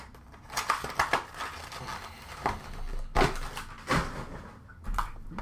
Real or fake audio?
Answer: real